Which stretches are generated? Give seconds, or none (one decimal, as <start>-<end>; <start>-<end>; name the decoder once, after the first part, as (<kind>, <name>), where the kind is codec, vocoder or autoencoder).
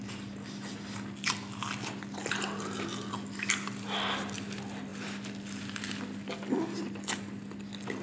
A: none